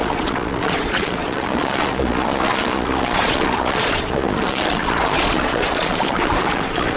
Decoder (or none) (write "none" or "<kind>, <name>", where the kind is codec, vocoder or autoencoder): vocoder, Vocos